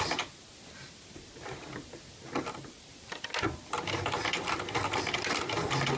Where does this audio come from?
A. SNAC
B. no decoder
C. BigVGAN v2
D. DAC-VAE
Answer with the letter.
B